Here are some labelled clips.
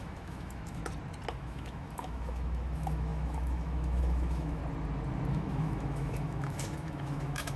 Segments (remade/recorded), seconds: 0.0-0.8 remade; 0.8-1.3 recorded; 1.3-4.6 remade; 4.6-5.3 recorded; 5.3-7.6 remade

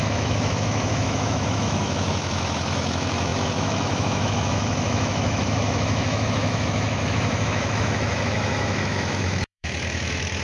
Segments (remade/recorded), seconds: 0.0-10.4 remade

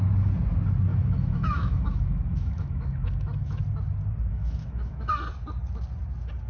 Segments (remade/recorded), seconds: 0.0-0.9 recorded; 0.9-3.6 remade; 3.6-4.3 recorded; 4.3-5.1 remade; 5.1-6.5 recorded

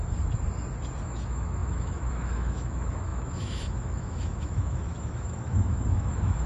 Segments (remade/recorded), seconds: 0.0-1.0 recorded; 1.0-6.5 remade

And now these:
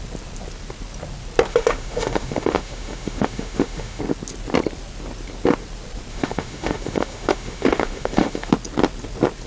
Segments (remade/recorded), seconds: 0.0-1.5 recorded; 1.5-4.0 remade; 4.0-6.1 recorded; 6.1-8.5 remade; 8.5-9.5 recorded